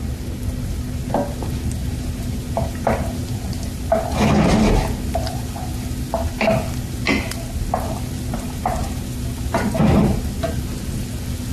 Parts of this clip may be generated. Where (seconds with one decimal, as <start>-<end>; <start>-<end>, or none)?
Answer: 1.8-3.2